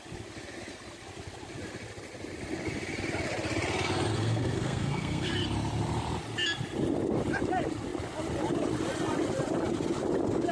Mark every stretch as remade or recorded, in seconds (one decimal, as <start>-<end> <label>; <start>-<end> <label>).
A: 0.0-4.1 recorded; 4.1-5.3 remade; 5.3-10.5 recorded